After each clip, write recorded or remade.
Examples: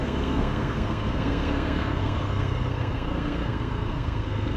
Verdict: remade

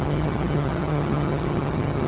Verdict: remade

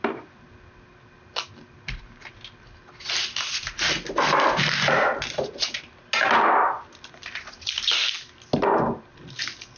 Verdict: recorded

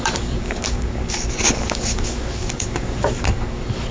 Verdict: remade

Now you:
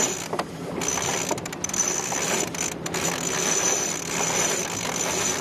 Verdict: recorded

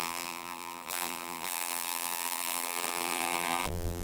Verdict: remade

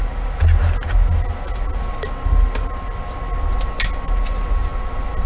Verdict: recorded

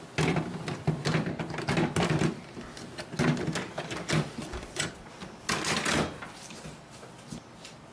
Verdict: recorded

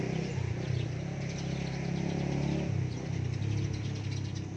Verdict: recorded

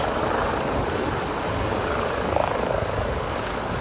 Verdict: remade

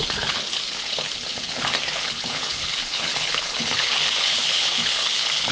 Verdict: remade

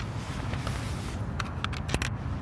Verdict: recorded